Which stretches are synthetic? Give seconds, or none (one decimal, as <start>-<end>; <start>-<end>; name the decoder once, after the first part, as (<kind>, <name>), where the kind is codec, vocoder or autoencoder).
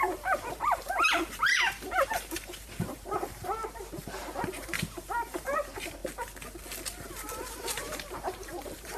0.0-3.6 (vocoder, BigVGAN v2); 4.4-6.0; 7.1-9.0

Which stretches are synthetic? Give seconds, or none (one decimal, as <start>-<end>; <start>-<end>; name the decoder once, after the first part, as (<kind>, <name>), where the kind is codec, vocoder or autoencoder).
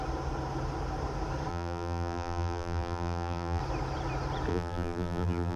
1.5-3.6 (vocoder, BigVGAN v2); 4.5-5.6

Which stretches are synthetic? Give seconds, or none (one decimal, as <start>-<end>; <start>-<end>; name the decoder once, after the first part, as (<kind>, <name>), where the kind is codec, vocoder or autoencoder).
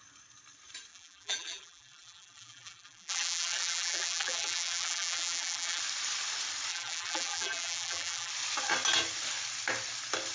0.9-5.8 (vocoder, BigVGAN v2); 6.7-8.3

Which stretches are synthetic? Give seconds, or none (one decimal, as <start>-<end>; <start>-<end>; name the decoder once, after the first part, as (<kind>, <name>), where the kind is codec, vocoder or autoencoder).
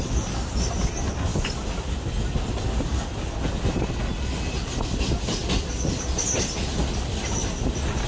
5.4-6.8 (vocoder, BigVGAN v2)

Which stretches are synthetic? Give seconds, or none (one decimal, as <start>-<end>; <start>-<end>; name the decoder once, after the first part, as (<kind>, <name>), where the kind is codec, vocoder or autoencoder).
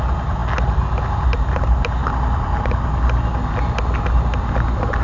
none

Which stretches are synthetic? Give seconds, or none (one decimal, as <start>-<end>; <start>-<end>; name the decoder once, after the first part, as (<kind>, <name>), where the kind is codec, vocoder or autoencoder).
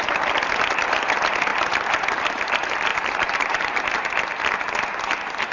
2.9-4.2 (vocoder, BigVGAN v2)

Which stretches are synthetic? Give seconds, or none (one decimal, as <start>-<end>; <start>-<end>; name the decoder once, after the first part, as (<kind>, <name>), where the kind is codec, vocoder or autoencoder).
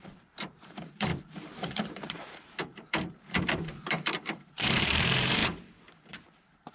0.0-6.7 (vocoder, BigVGAN v2)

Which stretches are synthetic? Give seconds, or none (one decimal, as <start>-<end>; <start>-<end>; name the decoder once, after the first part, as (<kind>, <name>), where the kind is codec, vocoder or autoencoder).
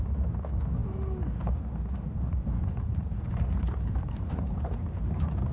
2.1-5.5 (vocoder, BigVGAN v2)